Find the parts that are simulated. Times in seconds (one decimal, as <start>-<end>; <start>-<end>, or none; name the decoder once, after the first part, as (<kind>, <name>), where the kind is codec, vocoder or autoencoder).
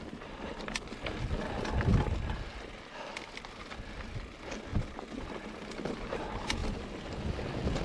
4.7-5.3 (vocoder, BigVGAN v2)